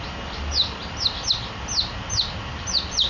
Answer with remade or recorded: recorded